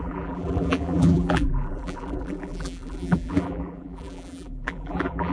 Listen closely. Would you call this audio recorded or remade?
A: remade